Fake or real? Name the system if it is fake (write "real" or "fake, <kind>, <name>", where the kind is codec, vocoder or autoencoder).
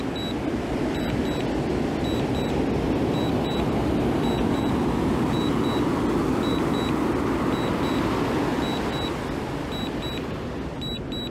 real